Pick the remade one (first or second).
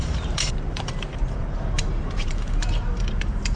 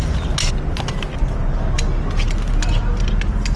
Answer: first